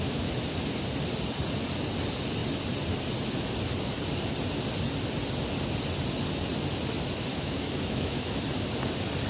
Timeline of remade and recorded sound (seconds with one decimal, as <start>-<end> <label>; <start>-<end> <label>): 0.0-7.3 recorded; 7.3-8.3 remade; 8.3-9.3 recorded